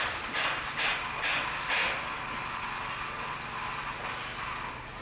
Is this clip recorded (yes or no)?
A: yes